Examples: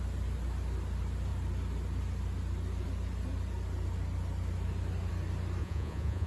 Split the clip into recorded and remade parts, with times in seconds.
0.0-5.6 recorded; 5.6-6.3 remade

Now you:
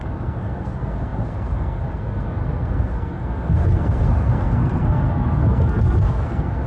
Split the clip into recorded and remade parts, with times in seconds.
0.0-6.7 remade

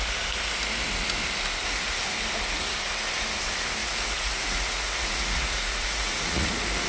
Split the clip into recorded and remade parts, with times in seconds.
0.0-3.8 recorded; 3.8-6.5 remade; 6.5-6.9 recorded

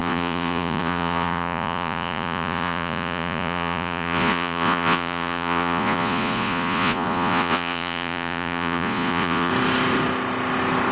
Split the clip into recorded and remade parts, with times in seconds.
0.0-9.5 remade; 9.5-10.9 recorded

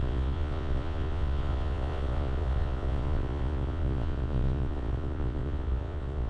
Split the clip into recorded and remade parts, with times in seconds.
0.0-6.3 remade

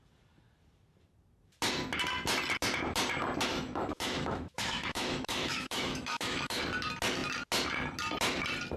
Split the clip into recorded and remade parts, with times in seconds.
0.0-3.5 recorded; 3.5-6.6 remade; 6.6-8.8 recorded

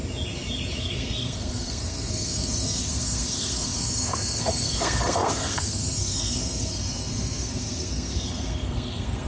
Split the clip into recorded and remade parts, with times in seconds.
0.0-0.8 recorded; 0.8-9.3 remade